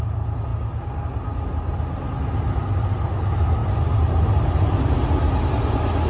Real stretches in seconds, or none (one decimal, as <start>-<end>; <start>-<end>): 0.0-6.1